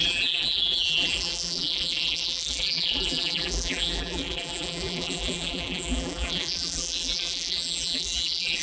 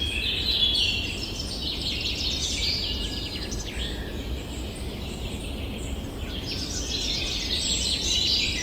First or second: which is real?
second